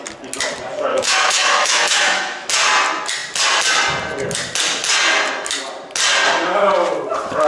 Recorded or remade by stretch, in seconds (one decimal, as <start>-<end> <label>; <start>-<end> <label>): 0.0-0.9 recorded; 0.9-2.5 remade; 2.5-7.5 recorded